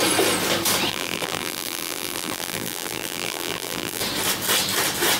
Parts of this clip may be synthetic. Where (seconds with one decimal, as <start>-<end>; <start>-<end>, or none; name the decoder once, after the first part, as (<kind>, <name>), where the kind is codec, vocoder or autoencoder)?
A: 0.9-4.0 (vocoder, BigVGAN v2)